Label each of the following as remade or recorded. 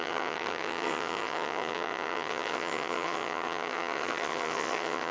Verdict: remade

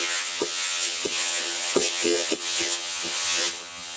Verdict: remade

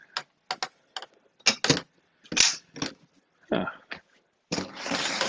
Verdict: recorded